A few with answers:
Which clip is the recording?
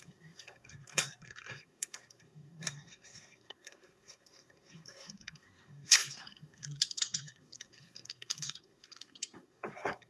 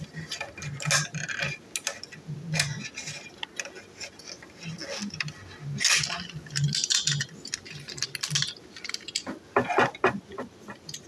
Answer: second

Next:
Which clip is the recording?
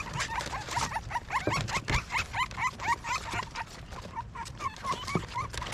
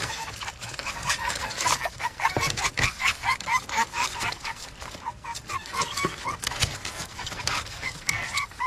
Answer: first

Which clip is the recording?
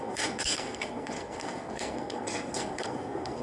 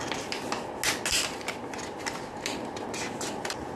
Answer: second